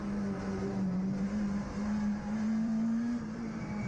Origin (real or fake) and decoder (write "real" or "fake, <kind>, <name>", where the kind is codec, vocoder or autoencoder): fake, vocoder, BigVGAN v2